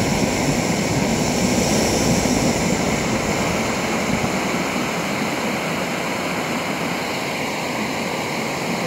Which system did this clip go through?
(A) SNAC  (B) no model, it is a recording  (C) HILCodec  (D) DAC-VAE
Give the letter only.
B